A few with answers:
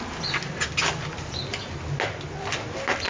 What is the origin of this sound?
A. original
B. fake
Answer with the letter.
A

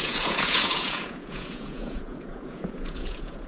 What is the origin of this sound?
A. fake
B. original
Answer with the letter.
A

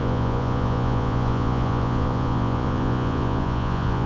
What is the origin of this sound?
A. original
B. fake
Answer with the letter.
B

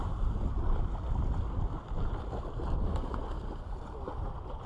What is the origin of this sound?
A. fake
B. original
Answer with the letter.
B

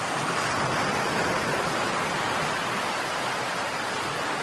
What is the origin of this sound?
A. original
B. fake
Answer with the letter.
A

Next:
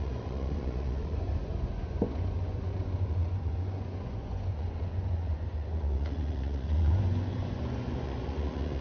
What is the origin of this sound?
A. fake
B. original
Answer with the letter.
A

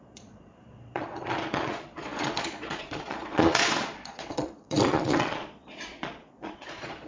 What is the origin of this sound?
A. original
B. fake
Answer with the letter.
B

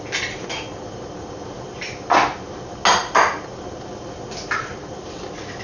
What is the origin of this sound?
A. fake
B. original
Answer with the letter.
B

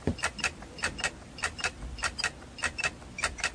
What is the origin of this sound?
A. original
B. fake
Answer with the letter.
A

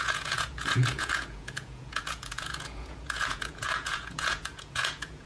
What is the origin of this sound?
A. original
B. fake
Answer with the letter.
B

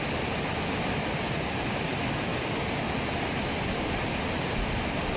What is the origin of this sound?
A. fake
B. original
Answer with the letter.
B